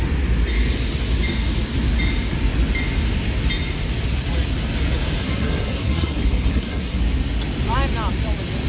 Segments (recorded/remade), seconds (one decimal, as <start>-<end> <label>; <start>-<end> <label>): 0.0-5.2 recorded; 5.2-7.0 remade; 7.0-8.7 recorded